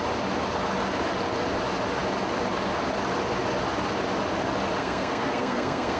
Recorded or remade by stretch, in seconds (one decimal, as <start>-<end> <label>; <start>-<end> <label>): 0.0-4.8 recorded; 4.8-6.0 remade